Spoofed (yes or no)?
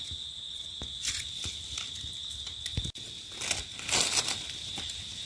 no